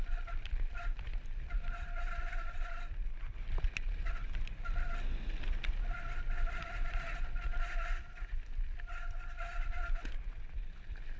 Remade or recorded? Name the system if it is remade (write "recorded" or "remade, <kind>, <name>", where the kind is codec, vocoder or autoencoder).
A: recorded